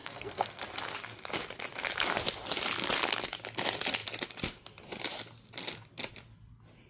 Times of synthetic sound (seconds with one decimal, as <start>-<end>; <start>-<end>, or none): 0.0-0.6